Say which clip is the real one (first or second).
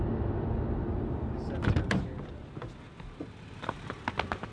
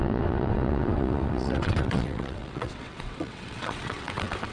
first